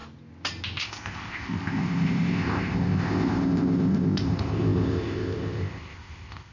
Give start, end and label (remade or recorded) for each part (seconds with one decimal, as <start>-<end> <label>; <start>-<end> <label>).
0.0-0.8 recorded; 0.8-6.5 remade